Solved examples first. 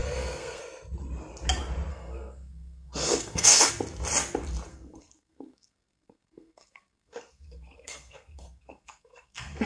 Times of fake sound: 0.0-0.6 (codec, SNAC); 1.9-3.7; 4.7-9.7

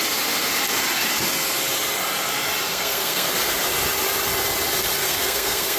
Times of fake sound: 2.7-3.3 (codec, SNAC); 5.0-5.8

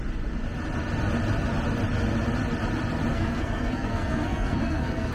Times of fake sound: 3.1-5.1 (codec, SNAC)

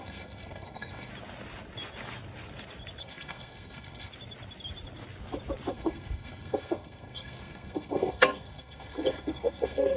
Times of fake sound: 0.0-1.1 (codec, SNAC); 3.0-4.1; 5.7-10.0

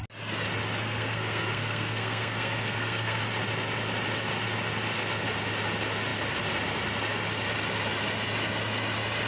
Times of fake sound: 0.8-3.2 (codec, SNAC)